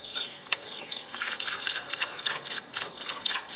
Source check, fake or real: fake